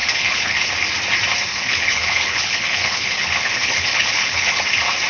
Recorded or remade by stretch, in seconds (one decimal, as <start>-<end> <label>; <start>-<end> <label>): 0.0-0.7 remade; 0.7-1.5 recorded; 1.5-4.6 remade; 4.6-5.1 recorded